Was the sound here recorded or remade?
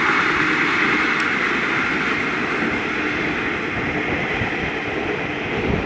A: recorded